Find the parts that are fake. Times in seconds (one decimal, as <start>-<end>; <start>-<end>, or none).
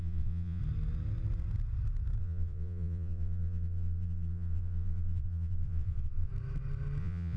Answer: 0.0-0.6; 2.2-6.3; 7.0-7.4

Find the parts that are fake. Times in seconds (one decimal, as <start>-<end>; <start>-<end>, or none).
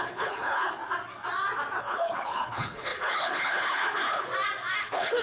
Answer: 0.0-0.8; 1.8-4.3; 4.8-5.2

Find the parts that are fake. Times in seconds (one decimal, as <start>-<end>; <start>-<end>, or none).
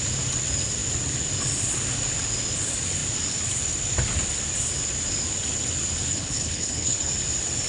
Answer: 6.1-7.1